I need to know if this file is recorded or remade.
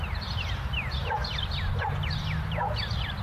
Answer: recorded